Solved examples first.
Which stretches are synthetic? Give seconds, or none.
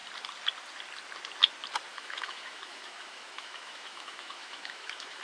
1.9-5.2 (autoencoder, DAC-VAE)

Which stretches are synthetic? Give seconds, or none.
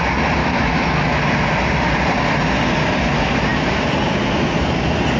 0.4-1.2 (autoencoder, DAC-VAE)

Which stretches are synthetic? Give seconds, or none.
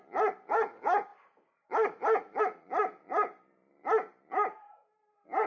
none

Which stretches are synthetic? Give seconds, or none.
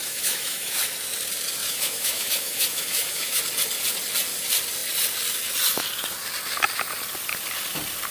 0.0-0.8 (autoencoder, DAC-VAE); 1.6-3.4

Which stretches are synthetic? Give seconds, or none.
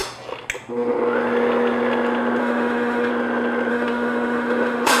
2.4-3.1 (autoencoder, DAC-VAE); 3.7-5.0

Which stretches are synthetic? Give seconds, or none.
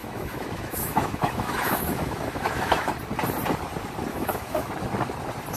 0.0-2.9 (autoencoder, DAC-VAE); 4.1-4.7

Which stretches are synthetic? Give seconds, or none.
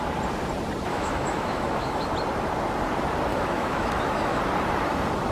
0.9-2.1 (autoencoder, DAC-VAE); 3.3-4.4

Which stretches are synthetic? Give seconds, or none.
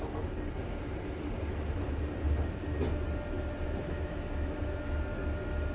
3.8-5.2 (autoencoder, DAC-VAE)